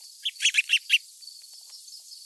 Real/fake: real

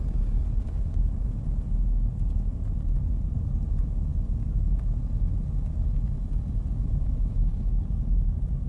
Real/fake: real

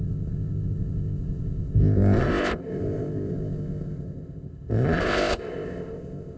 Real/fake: fake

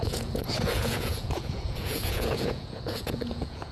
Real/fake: fake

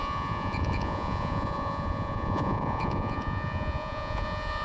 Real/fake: fake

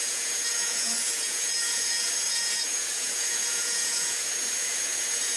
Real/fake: fake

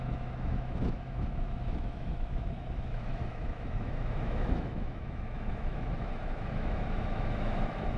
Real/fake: fake